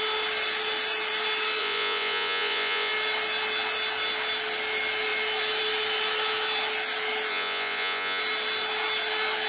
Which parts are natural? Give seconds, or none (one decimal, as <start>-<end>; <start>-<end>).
0.0-1.6; 2.9-7.3; 8.2-9.5